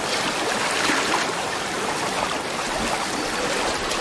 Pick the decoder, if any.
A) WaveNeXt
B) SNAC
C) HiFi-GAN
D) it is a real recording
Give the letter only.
D